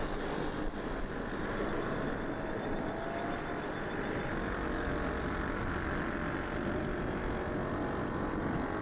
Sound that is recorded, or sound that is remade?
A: recorded